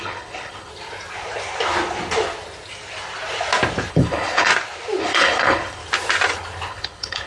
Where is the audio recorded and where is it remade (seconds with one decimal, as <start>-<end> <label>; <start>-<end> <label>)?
0.0-0.7 remade; 0.7-3.9 recorded; 3.9-4.5 remade; 4.5-5.0 recorded; 5.0-5.8 remade; 5.8-6.7 recorded; 6.7-7.3 remade